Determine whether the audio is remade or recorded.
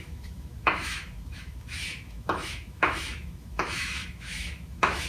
remade